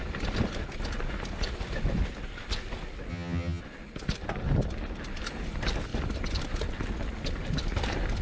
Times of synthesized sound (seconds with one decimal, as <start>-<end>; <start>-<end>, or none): 3.1-3.6